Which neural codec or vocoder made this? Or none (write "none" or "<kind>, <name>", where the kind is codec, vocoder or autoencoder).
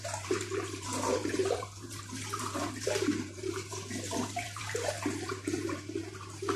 vocoder, BigVGAN v2